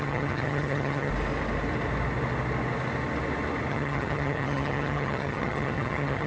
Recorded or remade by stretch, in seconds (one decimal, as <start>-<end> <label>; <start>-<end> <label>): 0.0-1.1 remade; 1.1-3.7 recorded; 3.7-6.3 remade